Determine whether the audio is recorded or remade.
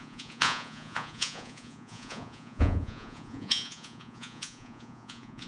remade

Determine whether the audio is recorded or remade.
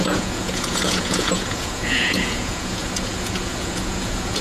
remade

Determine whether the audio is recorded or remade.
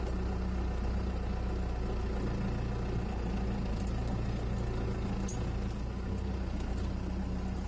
recorded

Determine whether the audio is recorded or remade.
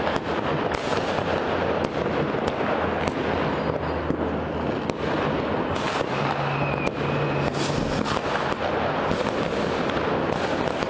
recorded